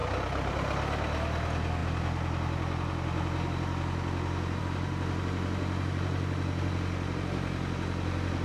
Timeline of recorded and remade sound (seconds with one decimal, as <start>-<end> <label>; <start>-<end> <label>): 0.0-0.5 remade; 0.5-8.4 recorded